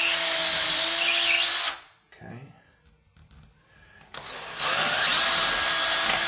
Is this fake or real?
real